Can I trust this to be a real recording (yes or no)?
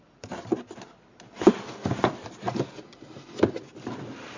yes